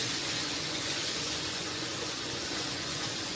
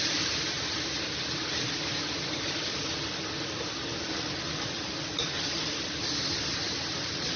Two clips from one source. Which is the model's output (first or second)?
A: first